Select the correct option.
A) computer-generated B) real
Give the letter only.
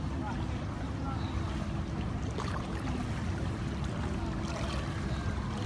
B